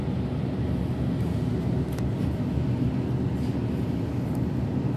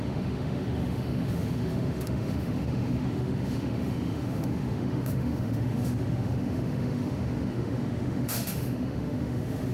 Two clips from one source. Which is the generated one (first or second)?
second